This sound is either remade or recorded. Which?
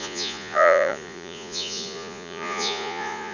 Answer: remade